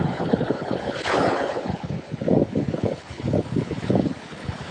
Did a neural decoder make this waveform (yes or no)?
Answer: yes